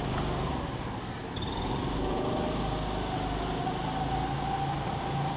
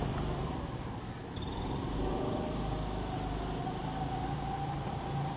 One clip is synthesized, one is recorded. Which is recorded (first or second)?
first